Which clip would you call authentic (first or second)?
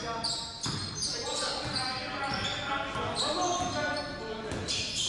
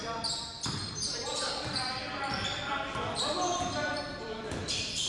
first